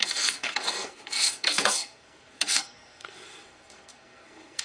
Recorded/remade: remade